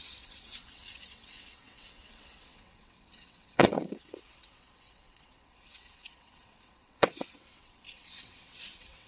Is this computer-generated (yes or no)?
yes